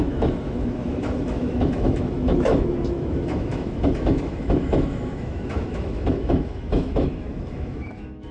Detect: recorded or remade remade